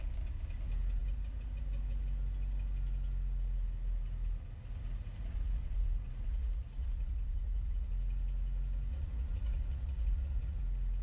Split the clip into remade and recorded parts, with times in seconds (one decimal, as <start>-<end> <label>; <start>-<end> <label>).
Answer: 0.0-5.0 recorded; 5.0-7.9 remade; 7.9-8.9 recorded; 8.9-10.6 remade; 10.6-11.0 recorded